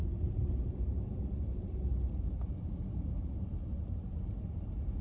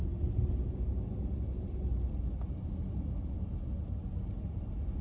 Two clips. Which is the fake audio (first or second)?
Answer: first